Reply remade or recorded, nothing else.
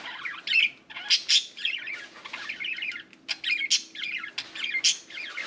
recorded